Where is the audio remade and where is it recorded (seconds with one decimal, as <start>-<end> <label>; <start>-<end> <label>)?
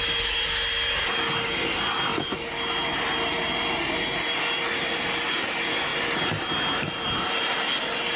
0.0-8.2 recorded